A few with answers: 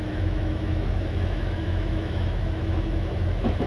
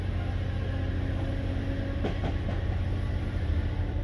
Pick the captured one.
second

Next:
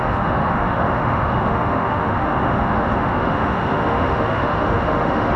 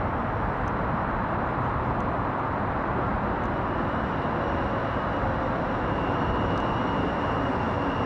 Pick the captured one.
second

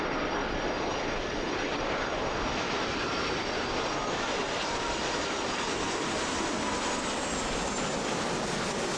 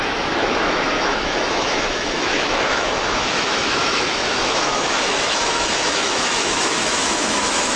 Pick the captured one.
first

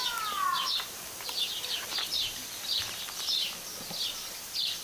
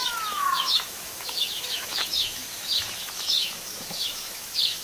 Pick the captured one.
first